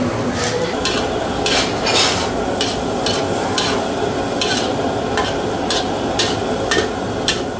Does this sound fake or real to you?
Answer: real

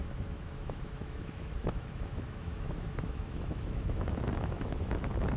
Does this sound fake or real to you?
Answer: fake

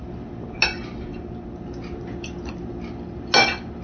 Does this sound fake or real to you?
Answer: real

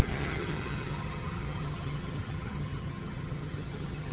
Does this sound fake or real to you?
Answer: fake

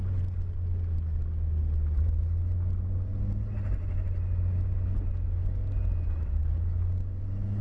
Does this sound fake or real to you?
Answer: real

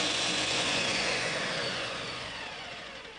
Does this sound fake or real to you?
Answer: fake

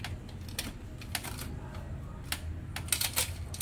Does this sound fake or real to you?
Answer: real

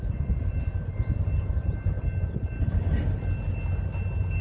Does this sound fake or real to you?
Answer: real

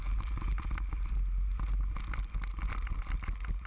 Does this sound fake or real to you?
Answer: real